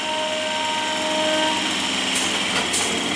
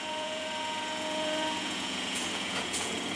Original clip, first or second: first